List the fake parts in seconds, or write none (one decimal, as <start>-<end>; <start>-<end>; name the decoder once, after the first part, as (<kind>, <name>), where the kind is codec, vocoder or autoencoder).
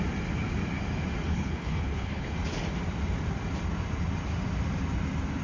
1.3-2.3 (codec, HILCodec)